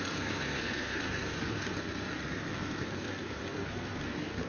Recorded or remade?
remade